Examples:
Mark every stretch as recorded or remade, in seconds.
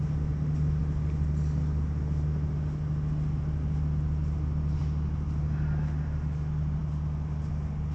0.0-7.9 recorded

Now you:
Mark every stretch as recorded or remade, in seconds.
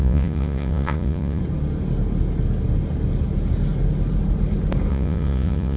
0.0-1.4 remade; 1.4-4.9 recorded; 4.9-5.8 remade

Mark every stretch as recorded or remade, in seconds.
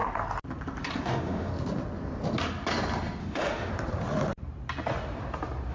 0.0-1.0 recorded; 1.0-1.5 remade; 1.5-3.2 recorded; 3.2-3.7 remade; 3.7-5.7 recorded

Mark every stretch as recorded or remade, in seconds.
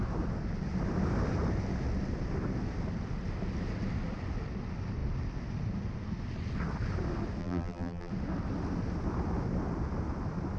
0.0-7.4 recorded; 7.4-8.1 remade; 8.1-10.6 recorded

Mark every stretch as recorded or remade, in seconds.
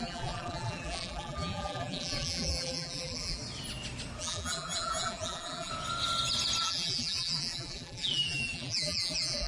0.0-3.4 remade; 3.4-4.2 recorded; 4.2-5.7 remade; 5.7-6.6 recorded; 6.6-9.5 remade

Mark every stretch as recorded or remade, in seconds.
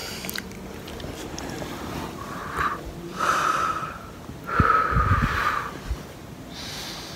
0.0-2.4 recorded; 2.4-4.2 remade; 4.2-7.2 recorded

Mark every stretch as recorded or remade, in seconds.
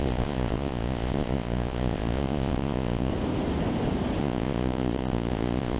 0.0-3.1 remade; 3.1-4.2 recorded; 4.2-5.8 remade